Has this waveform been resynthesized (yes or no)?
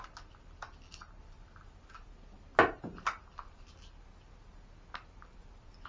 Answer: no